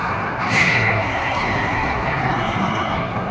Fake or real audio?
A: fake